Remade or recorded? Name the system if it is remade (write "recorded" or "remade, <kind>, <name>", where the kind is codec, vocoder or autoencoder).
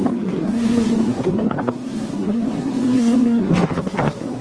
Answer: remade, codec, SNAC